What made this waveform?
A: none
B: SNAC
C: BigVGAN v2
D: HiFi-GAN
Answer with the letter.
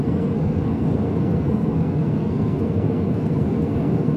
B